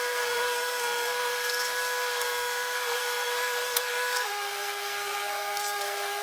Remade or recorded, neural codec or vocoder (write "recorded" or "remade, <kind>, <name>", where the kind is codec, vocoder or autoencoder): remade, codec, SNAC